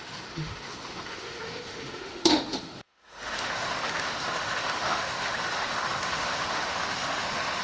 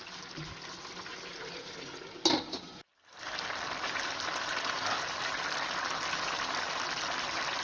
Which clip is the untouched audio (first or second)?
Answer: second